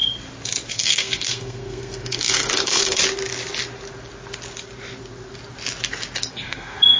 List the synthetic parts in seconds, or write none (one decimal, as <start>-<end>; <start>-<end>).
0.7-3.0; 6.3-7.0